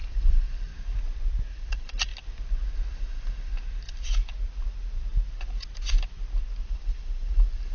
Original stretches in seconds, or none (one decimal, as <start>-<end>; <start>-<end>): 0.7-1.5; 2.1-2.9; 3.5-6.6